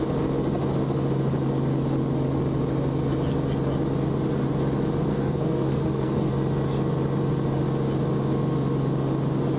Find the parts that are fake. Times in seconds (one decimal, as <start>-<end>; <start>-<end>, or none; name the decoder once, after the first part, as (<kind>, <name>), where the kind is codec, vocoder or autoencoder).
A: 5.1-6.3 (codec, SNAC)

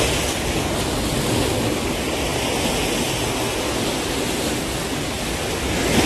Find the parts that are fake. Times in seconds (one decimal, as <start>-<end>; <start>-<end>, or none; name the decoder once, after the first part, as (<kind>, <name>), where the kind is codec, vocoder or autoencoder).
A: none